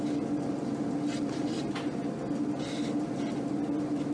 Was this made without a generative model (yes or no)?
yes